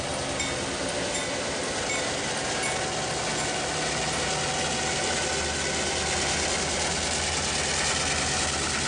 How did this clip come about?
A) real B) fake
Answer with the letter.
A